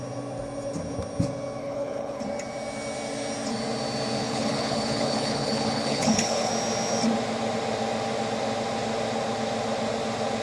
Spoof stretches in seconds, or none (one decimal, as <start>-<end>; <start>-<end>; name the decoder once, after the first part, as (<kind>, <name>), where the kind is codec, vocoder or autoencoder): 1.6-2.2 (codec, HILCodec); 4.2-6.5

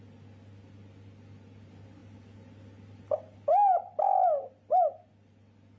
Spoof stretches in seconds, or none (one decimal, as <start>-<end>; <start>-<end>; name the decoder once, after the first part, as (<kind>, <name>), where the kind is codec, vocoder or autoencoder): none

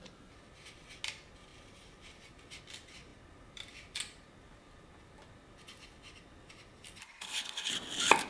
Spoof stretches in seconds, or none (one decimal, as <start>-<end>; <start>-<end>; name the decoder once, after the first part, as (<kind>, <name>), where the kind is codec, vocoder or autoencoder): 7.0-7.7 (codec, HILCodec)

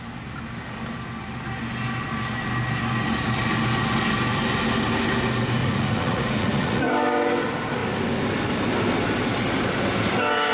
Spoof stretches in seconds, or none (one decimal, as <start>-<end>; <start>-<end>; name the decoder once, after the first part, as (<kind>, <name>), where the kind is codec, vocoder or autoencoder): 5.6-6.9 (vocoder, Vocos)

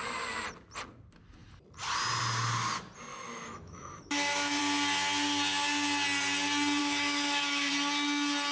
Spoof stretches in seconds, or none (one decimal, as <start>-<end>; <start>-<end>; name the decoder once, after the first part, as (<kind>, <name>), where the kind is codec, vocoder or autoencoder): 3.1-4.6 (autoencoder, DAC-VAE); 6.8-7.7

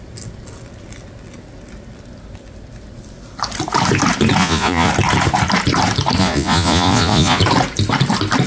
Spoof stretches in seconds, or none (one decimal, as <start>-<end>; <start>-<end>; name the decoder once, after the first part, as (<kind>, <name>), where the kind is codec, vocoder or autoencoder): 4.4-4.9 (vocoder, Vocos); 6.2-7.4